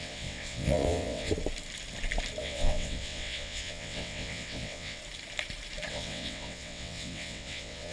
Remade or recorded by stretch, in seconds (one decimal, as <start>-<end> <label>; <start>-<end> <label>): 0.0-1.3 remade; 1.3-2.4 recorded; 2.4-5.0 remade; 5.0-5.9 recorded; 5.9-7.9 remade